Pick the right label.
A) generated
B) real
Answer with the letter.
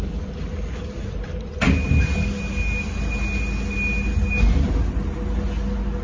B